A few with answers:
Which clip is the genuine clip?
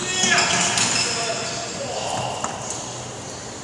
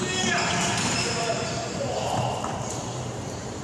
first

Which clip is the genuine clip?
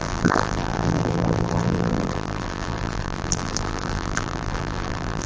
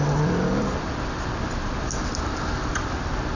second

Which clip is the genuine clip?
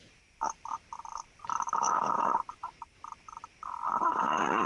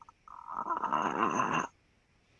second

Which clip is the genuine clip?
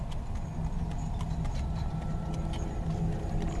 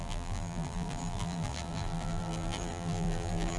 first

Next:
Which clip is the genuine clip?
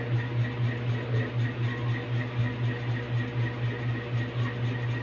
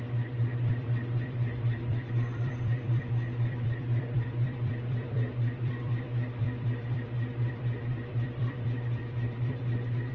first